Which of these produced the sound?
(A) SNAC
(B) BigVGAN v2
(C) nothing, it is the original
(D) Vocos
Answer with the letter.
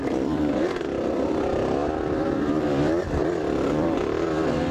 B